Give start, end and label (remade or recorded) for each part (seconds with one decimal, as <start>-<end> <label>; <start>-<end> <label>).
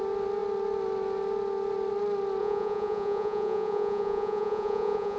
0.0-2.4 recorded; 2.4-5.2 remade